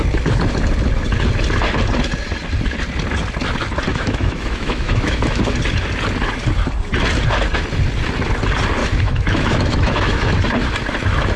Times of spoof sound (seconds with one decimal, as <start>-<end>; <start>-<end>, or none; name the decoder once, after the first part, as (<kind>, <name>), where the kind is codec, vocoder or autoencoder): 3.9-5.4 (autoencoder, DAC-VAE); 8.8-10.3